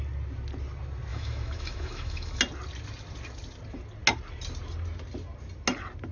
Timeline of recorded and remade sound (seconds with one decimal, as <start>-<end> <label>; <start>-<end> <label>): 0.0-1.1 recorded; 1.1-2.4 remade; 2.4-6.1 recorded